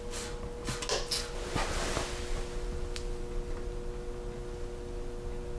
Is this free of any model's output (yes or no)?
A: yes